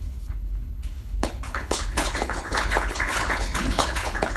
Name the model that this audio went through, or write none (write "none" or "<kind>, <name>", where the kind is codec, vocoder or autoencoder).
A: codec, HILCodec